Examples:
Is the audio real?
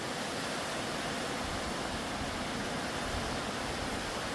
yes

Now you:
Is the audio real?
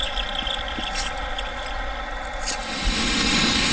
yes